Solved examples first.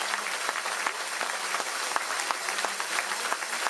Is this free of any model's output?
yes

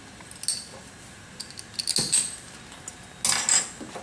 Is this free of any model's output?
yes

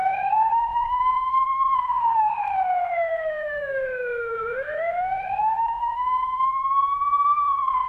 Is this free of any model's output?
no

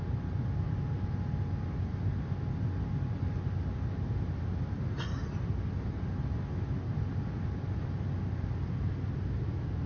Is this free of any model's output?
yes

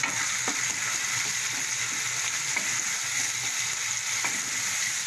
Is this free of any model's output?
yes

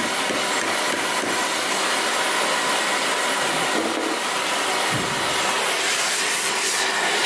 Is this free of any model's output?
yes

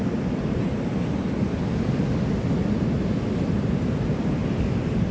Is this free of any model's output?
yes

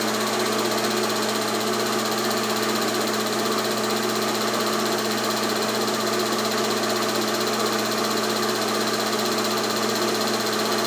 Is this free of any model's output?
yes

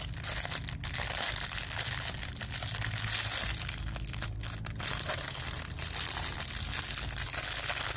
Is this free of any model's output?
yes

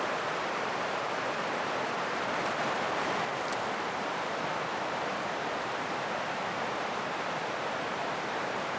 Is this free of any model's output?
no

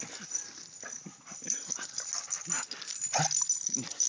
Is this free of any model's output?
yes